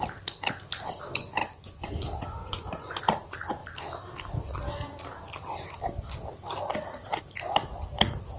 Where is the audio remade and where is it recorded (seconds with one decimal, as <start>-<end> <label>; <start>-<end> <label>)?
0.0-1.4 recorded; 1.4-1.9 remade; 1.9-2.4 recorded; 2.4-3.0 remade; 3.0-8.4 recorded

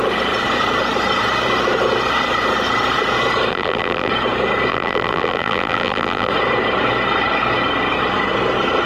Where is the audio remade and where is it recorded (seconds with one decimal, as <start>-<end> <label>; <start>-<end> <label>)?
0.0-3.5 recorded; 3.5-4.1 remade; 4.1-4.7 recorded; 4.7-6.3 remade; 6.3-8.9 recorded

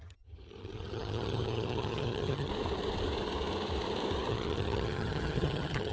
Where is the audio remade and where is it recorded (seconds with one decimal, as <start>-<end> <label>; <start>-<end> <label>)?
0.0-2.5 remade; 2.5-4.3 recorded; 4.3-5.9 remade

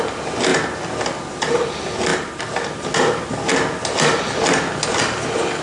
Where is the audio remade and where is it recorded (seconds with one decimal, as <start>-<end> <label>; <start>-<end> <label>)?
0.0-5.6 recorded

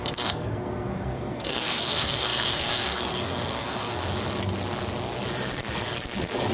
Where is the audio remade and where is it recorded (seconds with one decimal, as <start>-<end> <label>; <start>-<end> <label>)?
0.0-4.0 remade; 4.0-6.5 recorded

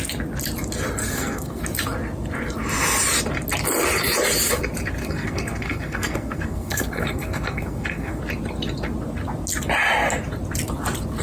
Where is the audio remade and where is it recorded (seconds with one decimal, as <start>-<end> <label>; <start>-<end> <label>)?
0.0-1.0 recorded; 1.0-1.6 remade; 1.6-5.0 recorded; 5.0-8.2 remade; 8.2-11.2 recorded

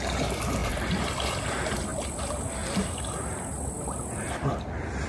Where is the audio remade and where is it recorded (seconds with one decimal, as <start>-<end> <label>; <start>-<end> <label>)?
0.0-5.1 recorded